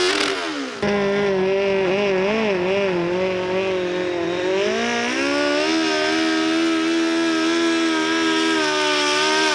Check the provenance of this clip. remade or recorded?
recorded